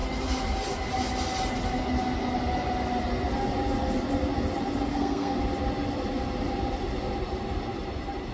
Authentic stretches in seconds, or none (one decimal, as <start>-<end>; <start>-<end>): 0.0-4.9; 5.4-8.3